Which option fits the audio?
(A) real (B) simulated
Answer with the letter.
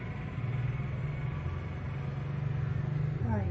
A